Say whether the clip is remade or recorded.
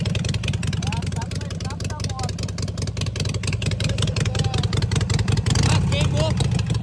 recorded